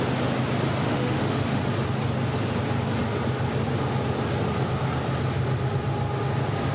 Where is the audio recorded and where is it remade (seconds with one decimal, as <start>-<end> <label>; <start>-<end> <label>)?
0.0-0.8 recorded; 0.8-1.6 remade; 1.6-6.7 recorded